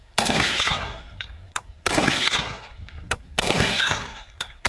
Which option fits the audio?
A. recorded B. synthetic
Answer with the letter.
B